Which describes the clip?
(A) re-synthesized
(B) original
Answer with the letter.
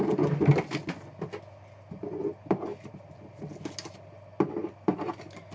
B